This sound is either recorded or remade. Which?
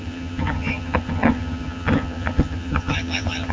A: remade